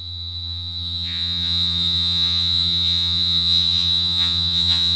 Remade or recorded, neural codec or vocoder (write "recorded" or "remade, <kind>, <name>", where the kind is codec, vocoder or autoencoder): remade, vocoder, HiFi-GAN